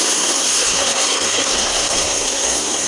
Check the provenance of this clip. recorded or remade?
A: remade